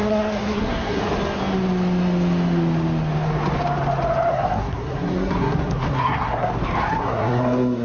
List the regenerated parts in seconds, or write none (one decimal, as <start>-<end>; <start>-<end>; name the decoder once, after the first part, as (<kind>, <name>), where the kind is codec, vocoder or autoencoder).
0.0-1.0 (codec, SNAC); 4.3-6.5; 7.0-7.8